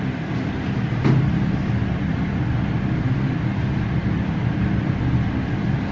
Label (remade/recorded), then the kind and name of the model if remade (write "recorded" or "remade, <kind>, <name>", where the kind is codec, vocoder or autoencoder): recorded